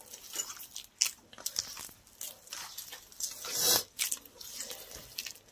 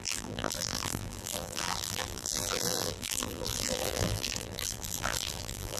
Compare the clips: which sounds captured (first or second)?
first